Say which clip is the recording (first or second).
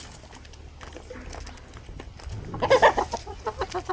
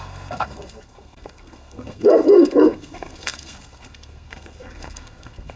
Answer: first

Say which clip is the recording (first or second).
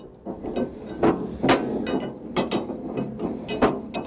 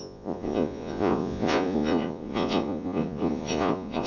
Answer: first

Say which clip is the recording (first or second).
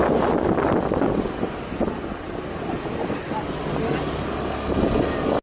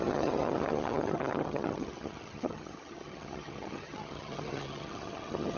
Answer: first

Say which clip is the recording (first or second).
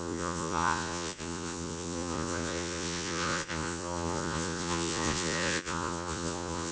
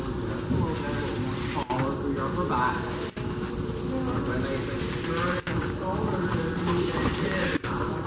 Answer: second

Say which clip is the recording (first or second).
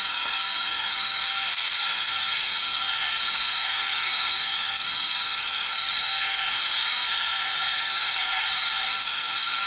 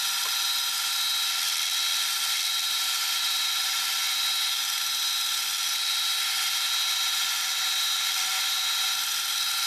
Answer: second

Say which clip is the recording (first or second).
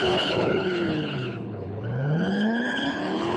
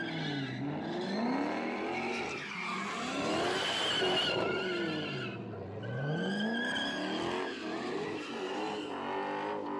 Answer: second